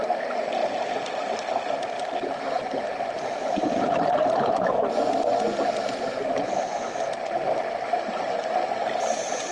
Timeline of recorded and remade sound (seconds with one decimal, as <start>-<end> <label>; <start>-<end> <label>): 0.0-9.5 recorded